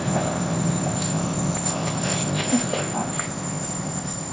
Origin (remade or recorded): remade